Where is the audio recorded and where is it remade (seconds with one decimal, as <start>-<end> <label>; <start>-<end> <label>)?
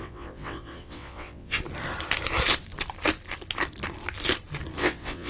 0.0-1.6 remade; 1.6-4.8 recorded; 4.8-5.3 remade